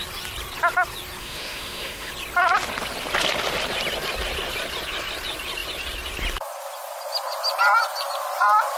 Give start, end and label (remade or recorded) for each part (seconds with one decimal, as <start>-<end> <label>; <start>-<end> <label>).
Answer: 0.0-1.2 recorded; 1.2-2.1 remade; 2.1-8.8 recorded